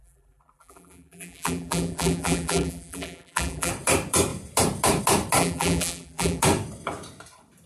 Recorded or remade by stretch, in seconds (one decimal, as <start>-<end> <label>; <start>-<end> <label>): 0.0-3.7 remade; 3.7-5.4 recorded; 5.4-6.4 remade; 6.4-7.7 recorded